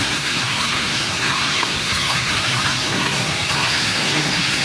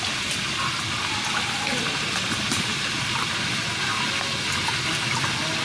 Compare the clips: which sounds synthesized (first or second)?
first